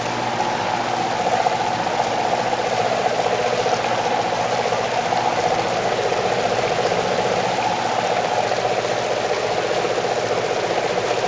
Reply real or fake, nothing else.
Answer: real